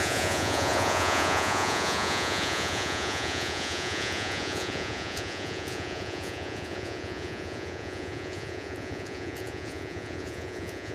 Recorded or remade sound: remade